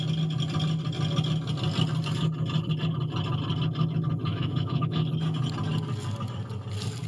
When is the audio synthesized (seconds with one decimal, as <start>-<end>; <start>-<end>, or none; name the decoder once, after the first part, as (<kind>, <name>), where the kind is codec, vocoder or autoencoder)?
4.3-5.1 (autoencoder, DAC-VAE)